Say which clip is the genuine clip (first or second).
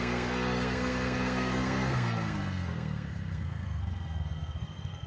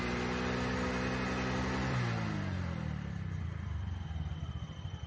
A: second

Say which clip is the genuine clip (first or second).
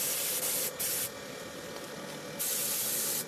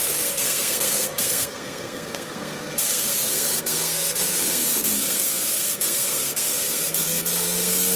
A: first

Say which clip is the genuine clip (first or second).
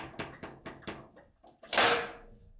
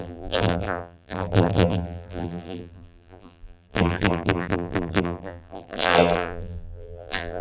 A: first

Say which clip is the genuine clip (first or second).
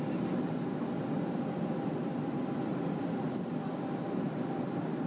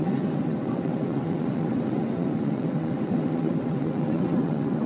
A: first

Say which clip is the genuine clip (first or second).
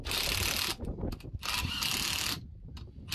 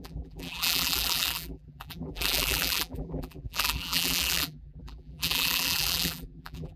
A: first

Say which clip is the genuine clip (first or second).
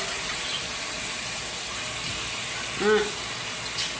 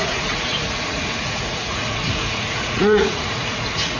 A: first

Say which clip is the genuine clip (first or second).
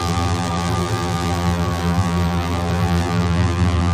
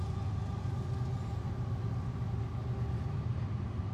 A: second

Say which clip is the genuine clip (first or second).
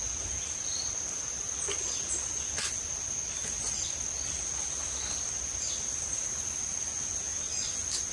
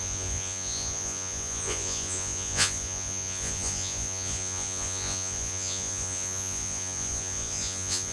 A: first